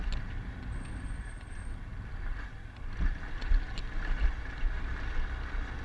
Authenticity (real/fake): real